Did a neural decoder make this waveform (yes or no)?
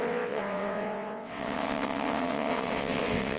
yes